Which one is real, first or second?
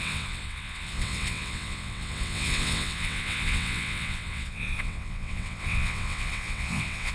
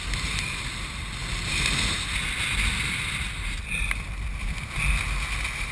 second